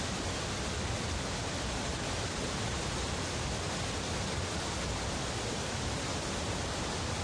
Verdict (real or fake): real